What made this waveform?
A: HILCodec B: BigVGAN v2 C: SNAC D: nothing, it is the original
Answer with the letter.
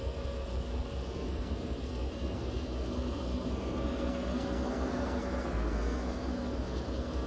C